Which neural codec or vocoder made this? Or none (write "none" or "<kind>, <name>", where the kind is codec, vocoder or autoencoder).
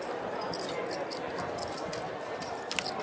none